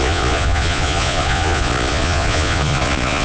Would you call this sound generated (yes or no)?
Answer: yes